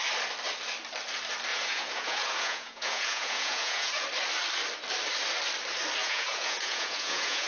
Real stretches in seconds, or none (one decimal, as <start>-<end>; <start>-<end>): 0.0-1.5; 3.9-6.0